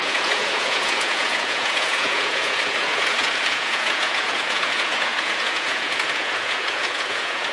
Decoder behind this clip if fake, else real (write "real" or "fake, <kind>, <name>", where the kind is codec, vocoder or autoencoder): fake, vocoder, Vocos